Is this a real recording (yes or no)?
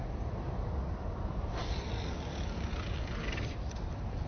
yes